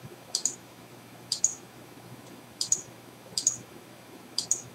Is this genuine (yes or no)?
no